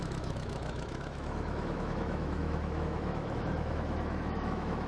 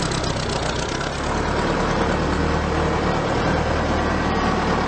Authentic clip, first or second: second